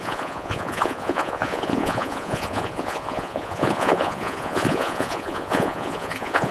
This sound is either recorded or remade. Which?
remade